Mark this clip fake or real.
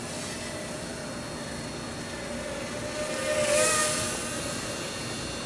real